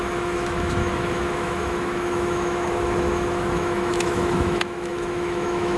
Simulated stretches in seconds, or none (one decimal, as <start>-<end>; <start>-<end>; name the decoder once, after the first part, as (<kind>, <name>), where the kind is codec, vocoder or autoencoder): 0.0-5.8 (autoencoder, DAC-VAE)